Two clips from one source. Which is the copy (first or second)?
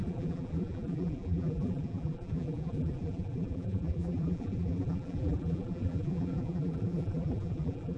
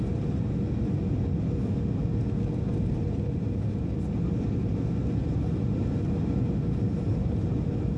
first